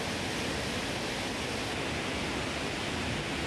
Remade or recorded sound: recorded